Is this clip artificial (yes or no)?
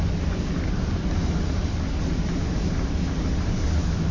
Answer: no